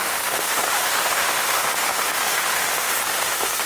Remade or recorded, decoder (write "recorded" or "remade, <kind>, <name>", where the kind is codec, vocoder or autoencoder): remade, autoencoder, DAC-VAE